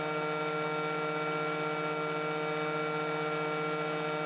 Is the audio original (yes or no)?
yes